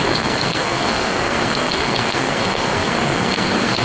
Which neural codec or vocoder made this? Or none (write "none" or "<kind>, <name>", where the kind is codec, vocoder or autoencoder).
codec, SNAC